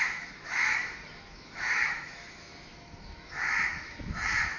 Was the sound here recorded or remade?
remade